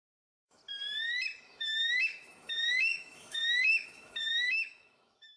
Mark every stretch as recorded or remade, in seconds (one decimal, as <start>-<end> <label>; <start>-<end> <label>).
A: 0.0-0.6 remade; 0.6-1.4 recorded; 1.4-5.4 remade